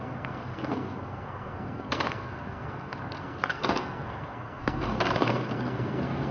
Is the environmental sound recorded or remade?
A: remade